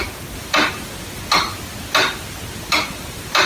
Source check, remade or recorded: recorded